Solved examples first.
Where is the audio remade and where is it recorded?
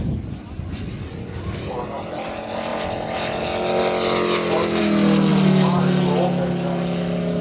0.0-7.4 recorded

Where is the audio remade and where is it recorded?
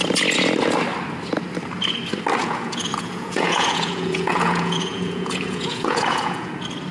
0.0-2.4 recorded; 2.4-6.5 remade; 6.5-6.9 recorded